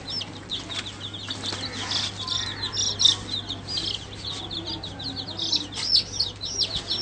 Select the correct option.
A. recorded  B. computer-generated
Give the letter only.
A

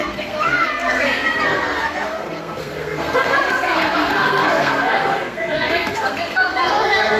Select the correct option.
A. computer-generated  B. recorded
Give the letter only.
A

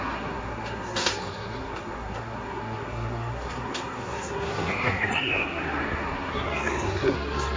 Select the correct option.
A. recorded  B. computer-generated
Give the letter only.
B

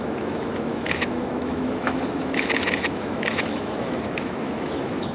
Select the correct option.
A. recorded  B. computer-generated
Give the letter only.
B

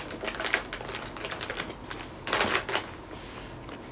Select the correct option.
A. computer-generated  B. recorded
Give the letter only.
B